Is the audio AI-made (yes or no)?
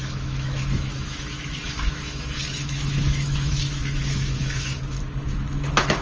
yes